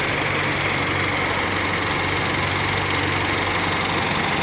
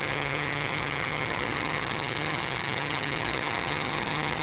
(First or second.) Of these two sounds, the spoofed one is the second